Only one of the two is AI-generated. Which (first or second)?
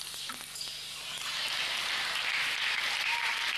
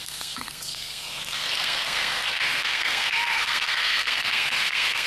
second